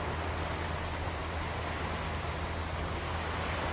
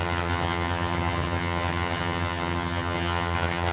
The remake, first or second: second